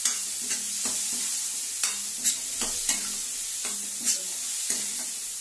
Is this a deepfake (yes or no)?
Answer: no